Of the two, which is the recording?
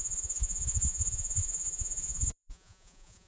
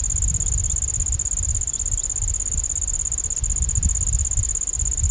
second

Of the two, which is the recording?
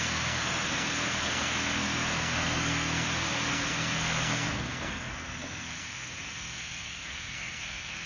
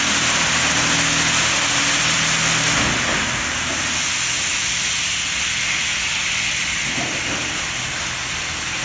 second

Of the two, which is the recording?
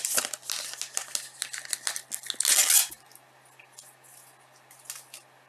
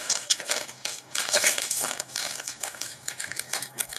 first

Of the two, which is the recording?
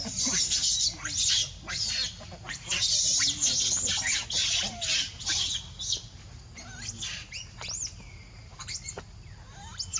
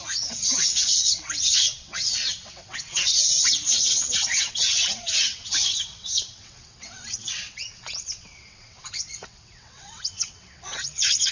first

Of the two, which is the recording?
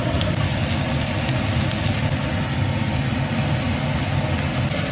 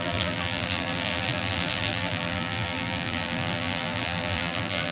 first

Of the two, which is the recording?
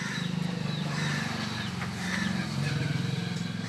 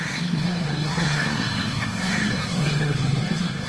first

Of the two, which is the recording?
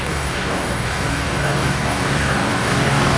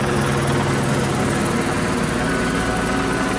second